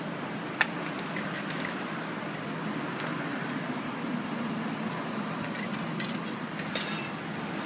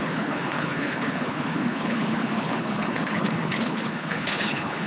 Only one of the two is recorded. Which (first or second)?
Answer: first